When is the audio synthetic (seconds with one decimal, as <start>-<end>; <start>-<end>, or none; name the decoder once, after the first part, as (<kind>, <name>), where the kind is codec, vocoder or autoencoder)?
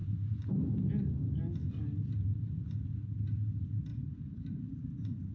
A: 3.9-5.3 (vocoder, BigVGAN v2)